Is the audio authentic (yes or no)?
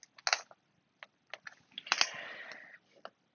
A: yes